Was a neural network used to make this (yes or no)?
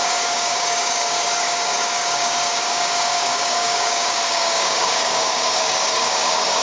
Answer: yes